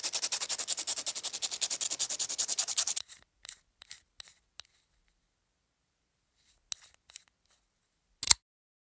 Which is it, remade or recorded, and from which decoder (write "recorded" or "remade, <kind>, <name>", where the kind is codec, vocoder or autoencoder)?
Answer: recorded